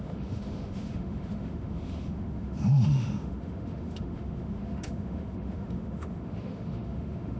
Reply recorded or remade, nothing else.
remade